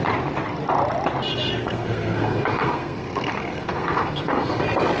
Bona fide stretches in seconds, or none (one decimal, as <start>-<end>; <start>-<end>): 0.0-1.6; 4.6-5.0

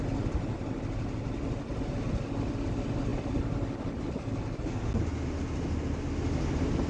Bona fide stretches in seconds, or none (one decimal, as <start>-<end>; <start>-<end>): 0.0-6.9

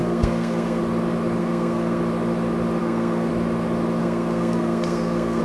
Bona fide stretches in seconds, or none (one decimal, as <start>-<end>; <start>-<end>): 0.8-1.4; 2.0-2.8; 3.3-4.0

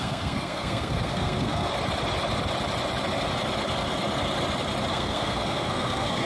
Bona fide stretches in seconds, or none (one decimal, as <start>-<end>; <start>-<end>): 1.7-4.9

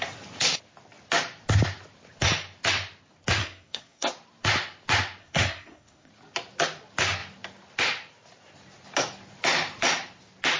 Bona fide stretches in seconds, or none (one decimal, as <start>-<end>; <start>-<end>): 0.0-3.4; 4.1-5.2; 6.1-10.6

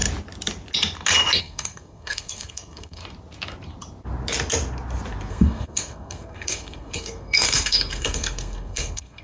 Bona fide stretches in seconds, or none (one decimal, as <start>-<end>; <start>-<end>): 0.0-1.4; 3.0-5.3

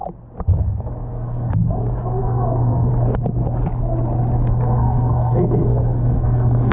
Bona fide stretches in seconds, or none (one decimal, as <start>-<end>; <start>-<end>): 0.0-0.8; 1.6-2.2; 2.9-4.5

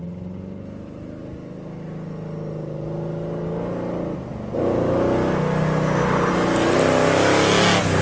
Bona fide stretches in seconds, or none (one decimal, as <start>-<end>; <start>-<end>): 0.0-8.0